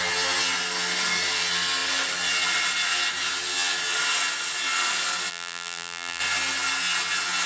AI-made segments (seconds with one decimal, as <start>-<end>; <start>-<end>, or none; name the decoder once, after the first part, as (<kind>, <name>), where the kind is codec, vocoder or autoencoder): 5.3-6.2 (vocoder, BigVGAN v2)